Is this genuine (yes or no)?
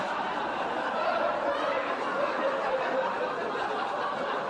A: yes